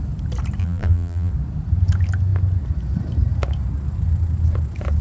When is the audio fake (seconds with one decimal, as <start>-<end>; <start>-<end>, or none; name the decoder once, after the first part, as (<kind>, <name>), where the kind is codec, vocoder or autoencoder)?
0.6-1.3 (vocoder, BigVGAN v2)